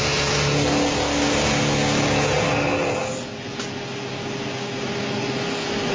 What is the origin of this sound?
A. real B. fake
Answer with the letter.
A